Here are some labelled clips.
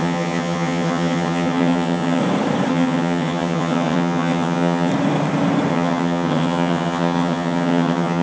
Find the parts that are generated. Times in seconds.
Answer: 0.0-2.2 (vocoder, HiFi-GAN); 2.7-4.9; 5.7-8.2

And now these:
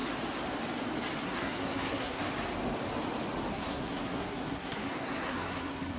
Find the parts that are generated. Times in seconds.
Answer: 1.2-2.2 (codec, SNAC); 3.5-6.0

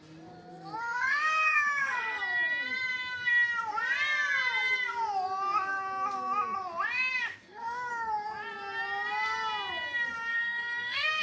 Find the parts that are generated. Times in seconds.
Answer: 0.5-2.2 (codec, SNAC); 7.3-7.9; 10.3-11.2

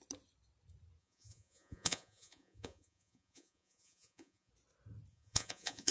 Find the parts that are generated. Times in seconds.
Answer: 1.0-4.5 (vocoder, Vocos); 5.1-5.9